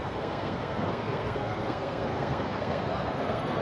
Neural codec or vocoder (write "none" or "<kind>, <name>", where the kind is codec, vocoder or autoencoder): codec, SNAC